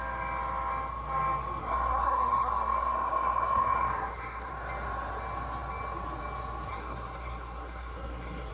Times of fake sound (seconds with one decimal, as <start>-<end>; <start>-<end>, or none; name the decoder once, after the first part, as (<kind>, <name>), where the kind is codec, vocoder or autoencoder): 1.6-4.5 (codec, SNAC); 6.7-8.5